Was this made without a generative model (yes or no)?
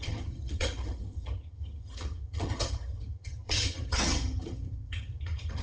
no